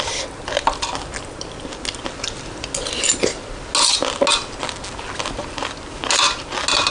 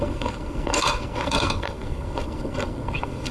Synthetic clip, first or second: second